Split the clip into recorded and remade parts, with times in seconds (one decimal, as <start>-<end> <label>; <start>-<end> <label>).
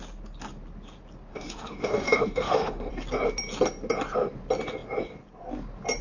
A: 0.0-1.3 recorded; 1.3-2.9 remade; 2.9-6.0 recorded